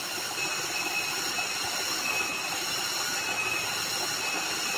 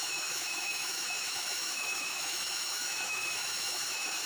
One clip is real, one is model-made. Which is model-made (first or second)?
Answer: second